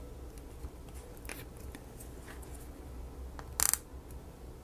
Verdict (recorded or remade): recorded